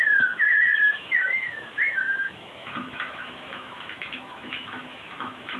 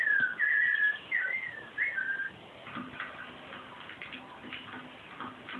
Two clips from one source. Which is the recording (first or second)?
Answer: second